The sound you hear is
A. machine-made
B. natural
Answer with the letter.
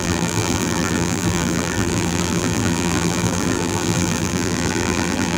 A